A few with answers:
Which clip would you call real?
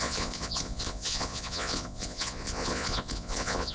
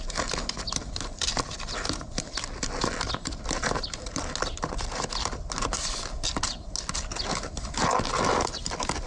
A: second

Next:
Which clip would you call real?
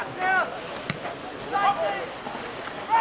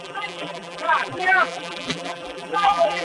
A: first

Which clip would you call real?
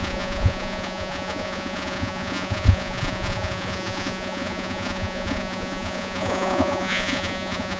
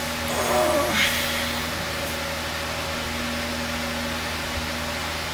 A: second